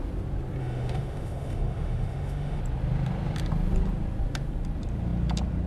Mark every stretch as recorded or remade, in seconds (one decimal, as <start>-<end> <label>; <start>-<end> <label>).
0.0-0.6 recorded; 0.6-2.6 remade; 2.6-5.7 recorded